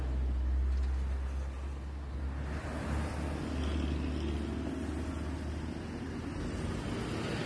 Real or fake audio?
real